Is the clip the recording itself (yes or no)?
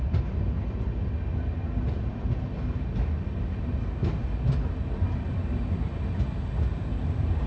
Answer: yes